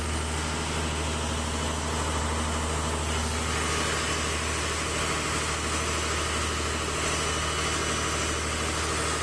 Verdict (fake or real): real